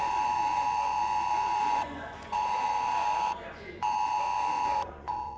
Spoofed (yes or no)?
yes